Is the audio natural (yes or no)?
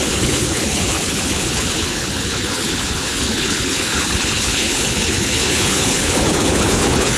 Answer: no